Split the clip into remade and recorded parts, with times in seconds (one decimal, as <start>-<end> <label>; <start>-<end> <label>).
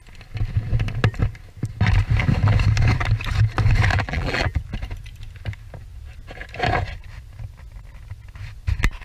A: 0.0-3.9 recorded; 3.9-4.6 remade; 4.6-9.0 recorded